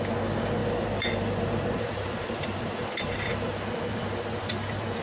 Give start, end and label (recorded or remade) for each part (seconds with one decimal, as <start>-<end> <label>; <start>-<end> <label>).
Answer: 0.0-0.6 recorded; 0.6-3.6 remade; 3.6-5.0 recorded